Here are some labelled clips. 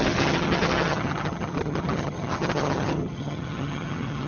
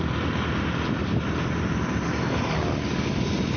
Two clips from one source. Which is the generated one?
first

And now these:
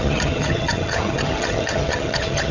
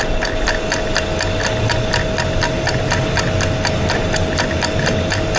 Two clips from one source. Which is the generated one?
first